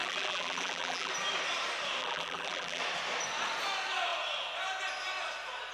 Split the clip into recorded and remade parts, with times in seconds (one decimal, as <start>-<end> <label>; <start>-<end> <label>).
0.0-1.1 remade; 1.1-2.0 recorded; 2.0-2.8 remade; 2.8-5.7 recorded